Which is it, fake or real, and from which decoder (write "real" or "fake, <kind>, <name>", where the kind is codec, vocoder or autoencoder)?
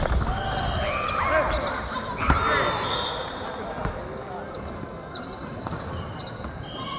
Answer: real